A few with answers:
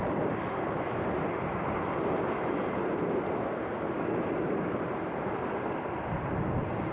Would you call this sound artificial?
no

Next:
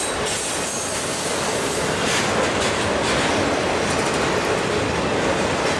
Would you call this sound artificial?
no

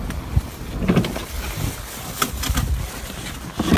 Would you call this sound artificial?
no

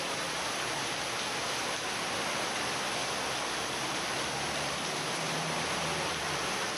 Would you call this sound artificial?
yes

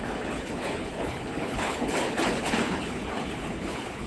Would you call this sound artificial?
yes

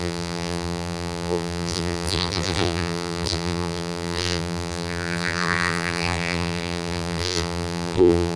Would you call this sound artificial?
yes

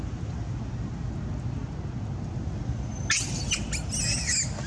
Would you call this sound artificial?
no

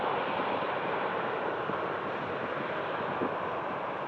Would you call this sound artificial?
no